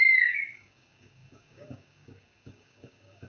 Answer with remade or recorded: remade